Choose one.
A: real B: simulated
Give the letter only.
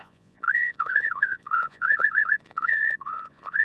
B